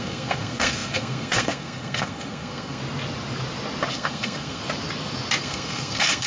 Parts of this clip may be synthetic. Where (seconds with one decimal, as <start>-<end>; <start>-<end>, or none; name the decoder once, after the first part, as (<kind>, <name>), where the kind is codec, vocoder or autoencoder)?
0.0-2.8 (codec, SNAC); 3.9-4.6; 5.4-6.3